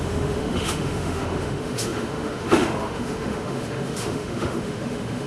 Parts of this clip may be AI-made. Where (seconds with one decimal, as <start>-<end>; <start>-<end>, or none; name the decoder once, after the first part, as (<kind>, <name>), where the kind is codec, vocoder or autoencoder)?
0.0-5.3 (autoencoder, DAC-VAE)